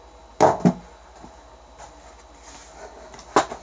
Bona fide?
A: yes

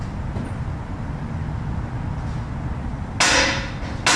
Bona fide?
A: yes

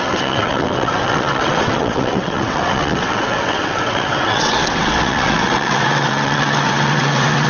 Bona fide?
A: no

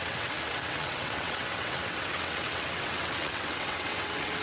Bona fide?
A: no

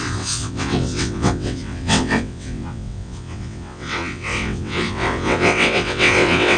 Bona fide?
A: no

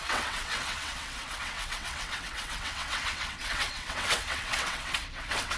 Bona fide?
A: no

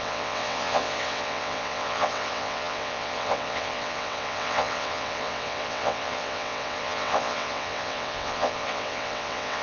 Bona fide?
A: no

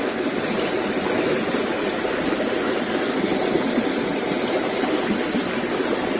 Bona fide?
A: yes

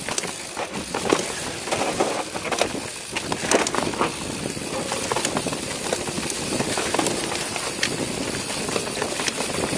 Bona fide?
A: yes